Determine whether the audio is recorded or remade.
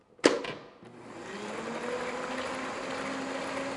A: recorded